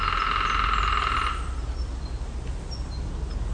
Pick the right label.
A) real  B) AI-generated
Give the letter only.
A